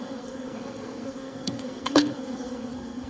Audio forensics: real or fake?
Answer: fake